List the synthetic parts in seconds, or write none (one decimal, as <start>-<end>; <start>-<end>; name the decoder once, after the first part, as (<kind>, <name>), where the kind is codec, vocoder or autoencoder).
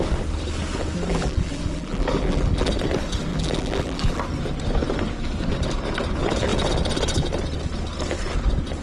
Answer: 1.1-2.7 (vocoder, BigVGAN v2); 3.3-4.2